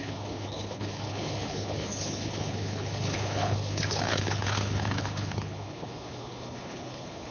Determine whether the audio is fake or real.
fake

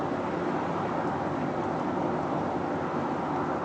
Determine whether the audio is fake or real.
real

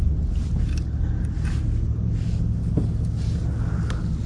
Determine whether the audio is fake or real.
real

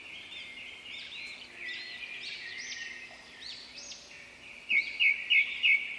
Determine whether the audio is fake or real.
real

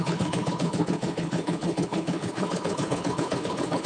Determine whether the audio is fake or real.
fake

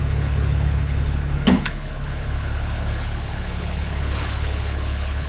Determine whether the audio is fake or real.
fake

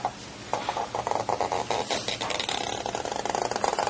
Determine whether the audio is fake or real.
real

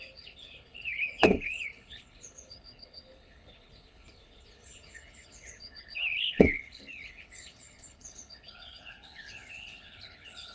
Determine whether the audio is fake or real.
fake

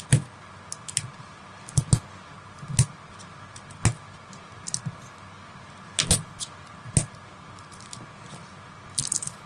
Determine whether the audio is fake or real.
real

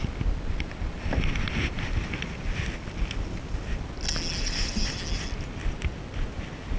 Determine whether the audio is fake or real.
real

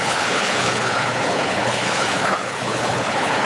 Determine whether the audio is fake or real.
fake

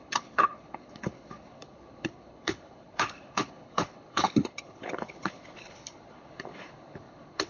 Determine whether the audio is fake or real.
fake